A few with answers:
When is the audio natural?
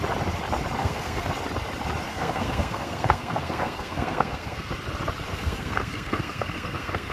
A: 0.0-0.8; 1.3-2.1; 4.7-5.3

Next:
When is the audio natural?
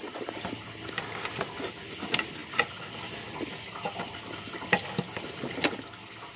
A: 0.0-6.4